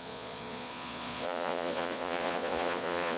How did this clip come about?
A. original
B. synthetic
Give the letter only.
B